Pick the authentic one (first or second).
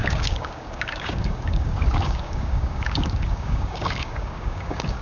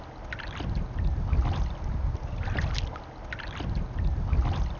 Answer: second